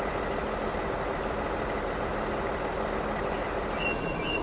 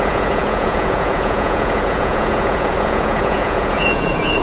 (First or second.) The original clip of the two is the first